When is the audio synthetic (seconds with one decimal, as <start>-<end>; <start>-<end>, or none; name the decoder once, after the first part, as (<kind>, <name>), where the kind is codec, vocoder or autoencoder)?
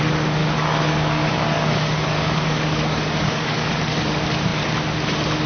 0.4-3.7 (codec, DAC)